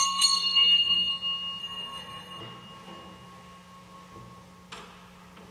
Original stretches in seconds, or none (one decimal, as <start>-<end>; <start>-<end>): 1.1-1.6; 2.4-5.5